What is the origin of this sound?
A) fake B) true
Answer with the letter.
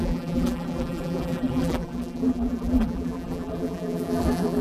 A